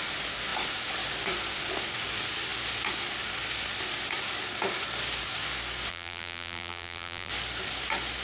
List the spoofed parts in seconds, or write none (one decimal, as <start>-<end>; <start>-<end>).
5.9-7.3